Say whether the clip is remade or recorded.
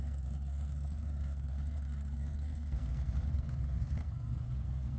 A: remade